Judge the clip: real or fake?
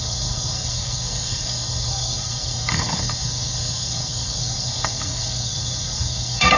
fake